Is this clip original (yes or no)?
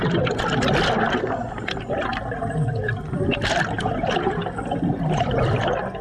yes